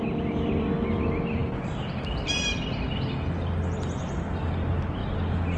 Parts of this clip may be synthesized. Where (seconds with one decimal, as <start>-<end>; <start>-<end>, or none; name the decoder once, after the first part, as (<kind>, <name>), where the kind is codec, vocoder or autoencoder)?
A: none